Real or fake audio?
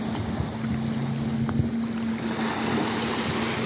real